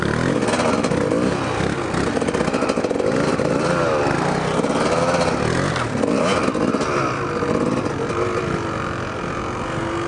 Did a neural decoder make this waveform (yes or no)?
no